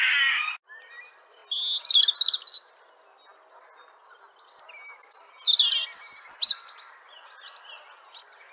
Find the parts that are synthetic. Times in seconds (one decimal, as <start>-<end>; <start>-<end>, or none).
none